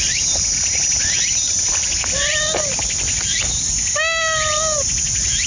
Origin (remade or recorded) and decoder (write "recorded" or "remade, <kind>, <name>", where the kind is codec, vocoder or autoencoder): recorded